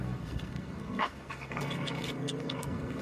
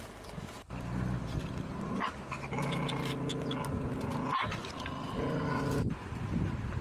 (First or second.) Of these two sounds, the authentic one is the second